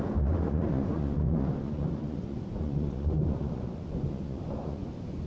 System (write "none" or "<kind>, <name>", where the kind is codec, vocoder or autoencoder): vocoder, Vocos